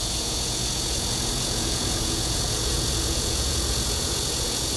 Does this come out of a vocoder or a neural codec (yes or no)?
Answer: yes